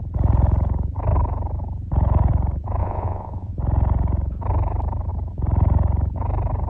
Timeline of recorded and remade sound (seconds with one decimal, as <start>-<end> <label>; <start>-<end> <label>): 0.0-2.8 recorded; 2.8-3.5 remade; 3.5-6.7 recorded